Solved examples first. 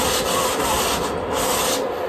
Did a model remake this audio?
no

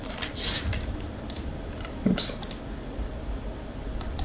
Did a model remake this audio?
no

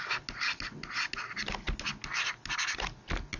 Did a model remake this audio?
no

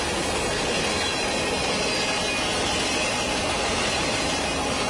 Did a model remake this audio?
no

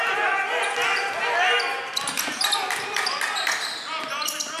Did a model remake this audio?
no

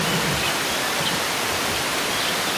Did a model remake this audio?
no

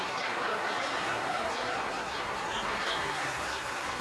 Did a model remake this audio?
yes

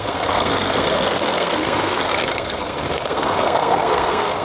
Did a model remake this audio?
yes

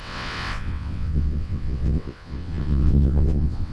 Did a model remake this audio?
yes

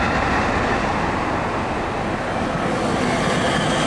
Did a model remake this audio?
no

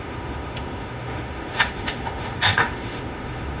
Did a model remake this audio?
yes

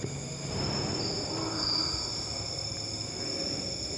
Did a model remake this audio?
no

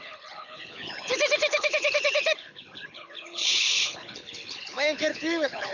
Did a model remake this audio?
yes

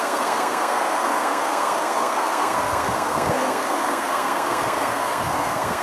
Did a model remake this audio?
yes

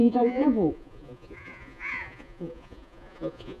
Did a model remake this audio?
yes